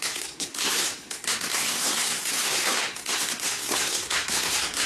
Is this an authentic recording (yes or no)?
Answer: no